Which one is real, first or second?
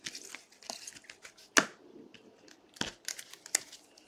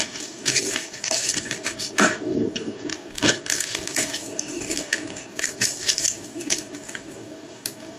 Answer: first